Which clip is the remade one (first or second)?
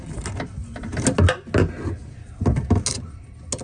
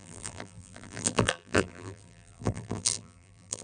second